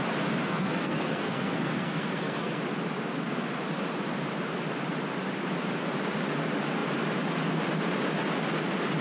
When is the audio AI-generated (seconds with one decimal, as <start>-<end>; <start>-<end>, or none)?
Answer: 0.4-2.6